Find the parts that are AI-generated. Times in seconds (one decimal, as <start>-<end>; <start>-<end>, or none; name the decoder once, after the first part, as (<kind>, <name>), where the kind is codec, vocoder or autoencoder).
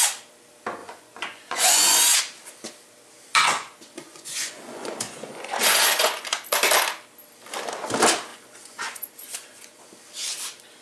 0.8-2.2 (vocoder, Vocos); 3.3-6.4; 8.3-9.8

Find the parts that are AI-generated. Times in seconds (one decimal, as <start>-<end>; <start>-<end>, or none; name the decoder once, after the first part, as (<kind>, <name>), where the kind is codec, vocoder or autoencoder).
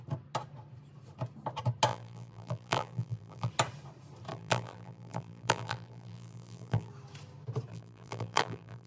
1.9-3.5 (vocoder, BigVGAN v2); 4.3-6.9; 7.7-8.9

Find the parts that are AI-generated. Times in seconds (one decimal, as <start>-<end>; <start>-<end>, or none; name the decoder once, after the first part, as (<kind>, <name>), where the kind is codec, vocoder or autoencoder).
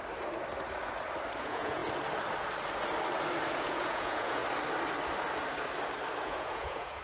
1.4-1.8 (vocoder, Vocos); 3.5-4.4; 6.2-7.0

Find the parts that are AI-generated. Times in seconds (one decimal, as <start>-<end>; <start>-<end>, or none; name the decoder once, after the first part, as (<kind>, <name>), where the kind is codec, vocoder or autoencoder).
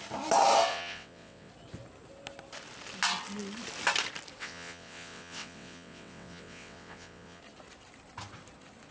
0.7-1.5 (vocoder, WaveNeXt); 4.4-7.4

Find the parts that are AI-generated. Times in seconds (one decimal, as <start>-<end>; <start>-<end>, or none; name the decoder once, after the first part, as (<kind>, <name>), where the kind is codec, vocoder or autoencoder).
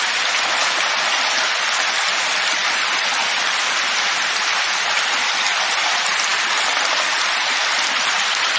0.0-0.6 (vocoder, BigVGAN v2); 1.5-2.6; 5.0-8.6